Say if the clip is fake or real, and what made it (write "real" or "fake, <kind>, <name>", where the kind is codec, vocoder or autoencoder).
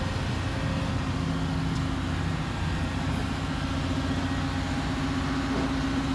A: real